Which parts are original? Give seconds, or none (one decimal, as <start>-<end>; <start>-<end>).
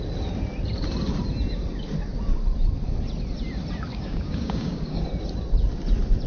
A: 0.0-3.9; 5.0-6.3